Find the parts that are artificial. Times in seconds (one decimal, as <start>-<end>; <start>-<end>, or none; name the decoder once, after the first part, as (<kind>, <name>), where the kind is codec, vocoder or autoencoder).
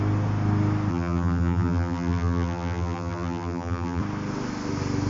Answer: 0.9-4.0 (vocoder, BigVGAN v2)